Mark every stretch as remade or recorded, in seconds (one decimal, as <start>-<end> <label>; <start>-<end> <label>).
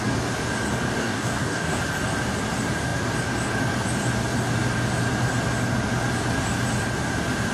0.0-1.0 recorded; 1.0-1.8 remade; 1.8-7.5 recorded